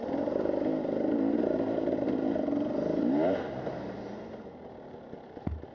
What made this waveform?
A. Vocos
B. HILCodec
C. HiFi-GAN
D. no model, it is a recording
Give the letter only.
D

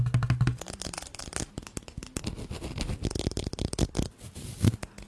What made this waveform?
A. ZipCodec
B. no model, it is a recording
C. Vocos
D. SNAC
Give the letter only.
B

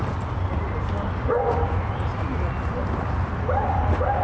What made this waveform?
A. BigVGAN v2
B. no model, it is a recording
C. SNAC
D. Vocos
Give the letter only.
B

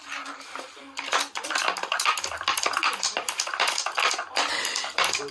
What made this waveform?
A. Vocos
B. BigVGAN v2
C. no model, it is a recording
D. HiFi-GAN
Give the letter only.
B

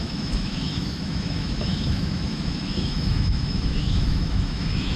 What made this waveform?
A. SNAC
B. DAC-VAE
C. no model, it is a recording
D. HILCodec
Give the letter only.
B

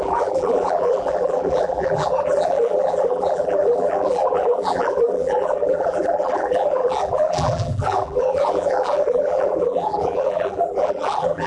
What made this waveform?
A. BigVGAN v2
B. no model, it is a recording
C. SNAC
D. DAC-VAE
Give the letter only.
A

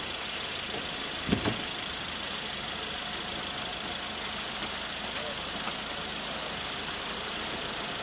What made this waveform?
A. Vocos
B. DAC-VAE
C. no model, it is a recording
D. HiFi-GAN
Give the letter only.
C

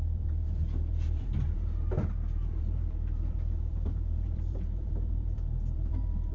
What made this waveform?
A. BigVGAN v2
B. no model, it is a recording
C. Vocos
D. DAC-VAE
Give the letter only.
A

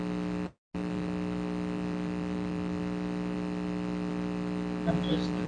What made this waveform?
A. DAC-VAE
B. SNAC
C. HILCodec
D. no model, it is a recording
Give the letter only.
D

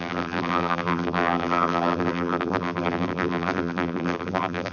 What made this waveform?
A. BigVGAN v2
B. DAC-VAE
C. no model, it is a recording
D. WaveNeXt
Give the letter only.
A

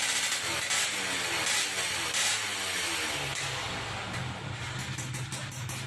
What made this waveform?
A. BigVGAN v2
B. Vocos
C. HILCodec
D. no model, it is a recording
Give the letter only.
D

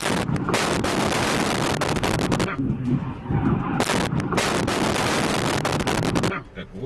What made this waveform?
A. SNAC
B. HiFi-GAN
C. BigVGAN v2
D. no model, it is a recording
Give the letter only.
D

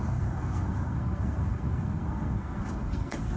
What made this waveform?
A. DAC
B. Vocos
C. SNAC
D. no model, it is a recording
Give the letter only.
C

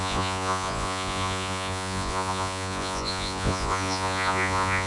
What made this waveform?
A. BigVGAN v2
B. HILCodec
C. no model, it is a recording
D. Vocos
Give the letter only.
D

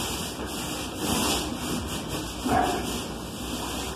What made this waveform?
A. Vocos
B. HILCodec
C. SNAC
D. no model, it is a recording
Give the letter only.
D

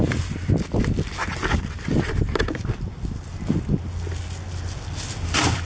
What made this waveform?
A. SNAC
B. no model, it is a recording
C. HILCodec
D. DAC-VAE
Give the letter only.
B